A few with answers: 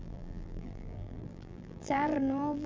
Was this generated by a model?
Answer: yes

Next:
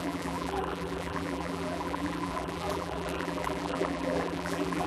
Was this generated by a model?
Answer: yes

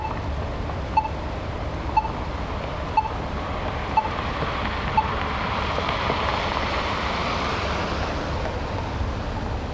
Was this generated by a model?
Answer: no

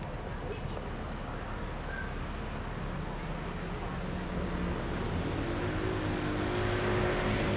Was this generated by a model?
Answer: no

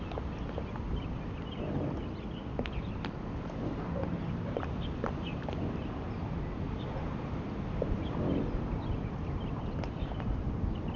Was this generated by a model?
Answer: no